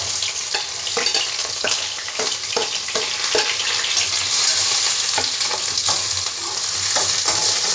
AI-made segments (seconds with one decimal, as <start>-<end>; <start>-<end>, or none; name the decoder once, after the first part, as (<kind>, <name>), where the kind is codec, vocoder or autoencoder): 1.4-2.2 (codec, HILCodec)